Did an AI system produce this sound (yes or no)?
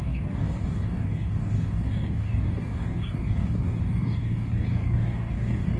yes